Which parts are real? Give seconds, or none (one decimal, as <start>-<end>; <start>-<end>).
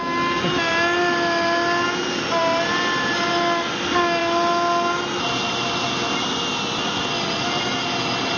0.0-8.4